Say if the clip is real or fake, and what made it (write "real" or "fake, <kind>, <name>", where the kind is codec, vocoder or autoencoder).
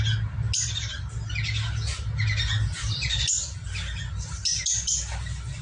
real